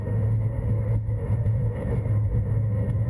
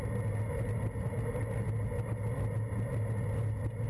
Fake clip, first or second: first